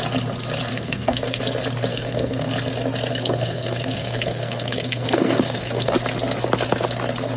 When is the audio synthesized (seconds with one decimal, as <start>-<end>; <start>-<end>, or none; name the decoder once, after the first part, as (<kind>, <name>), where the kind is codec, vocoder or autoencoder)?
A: 0.7-1.4 (codec, SNAC); 1.9-2.5; 3.1-5.9